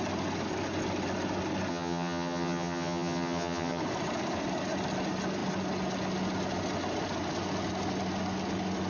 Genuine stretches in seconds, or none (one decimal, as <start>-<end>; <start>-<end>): 0.0-1.7; 3.8-8.9